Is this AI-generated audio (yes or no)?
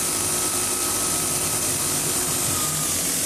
no